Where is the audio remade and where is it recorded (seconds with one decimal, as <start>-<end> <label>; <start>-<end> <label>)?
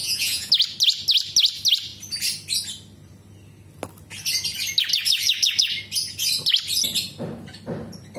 0.0-0.5 remade; 0.5-8.2 recorded